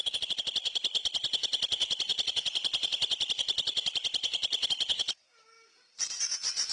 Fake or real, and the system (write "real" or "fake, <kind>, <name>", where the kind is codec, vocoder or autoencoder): real